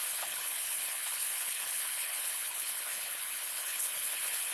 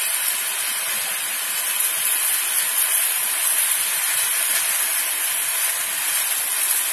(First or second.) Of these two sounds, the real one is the second